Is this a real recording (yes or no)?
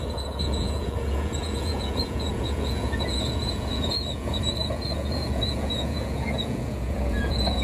no